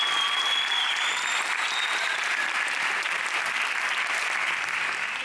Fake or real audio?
real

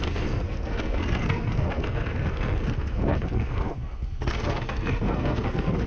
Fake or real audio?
fake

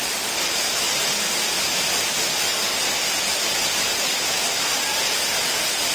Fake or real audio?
real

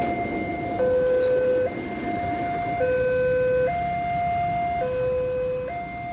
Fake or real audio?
real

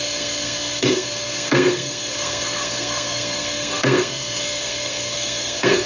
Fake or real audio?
fake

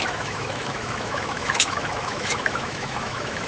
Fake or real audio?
fake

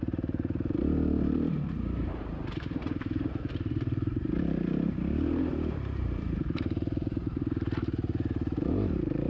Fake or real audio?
fake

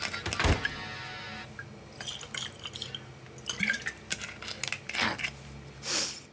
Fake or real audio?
real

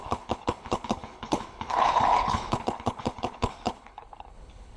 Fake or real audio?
fake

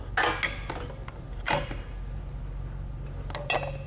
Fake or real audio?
real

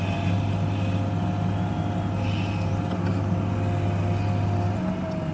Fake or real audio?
real